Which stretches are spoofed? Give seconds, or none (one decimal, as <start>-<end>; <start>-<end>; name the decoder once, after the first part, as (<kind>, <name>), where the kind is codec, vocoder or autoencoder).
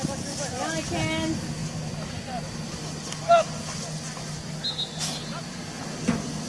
1.6-2.2 (vocoder, BigVGAN v2)